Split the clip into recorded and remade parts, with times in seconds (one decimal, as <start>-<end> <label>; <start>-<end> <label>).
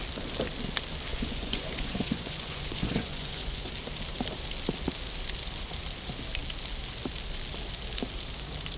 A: 0.0-1.1 recorded; 1.1-3.7 remade; 3.7-8.8 recorded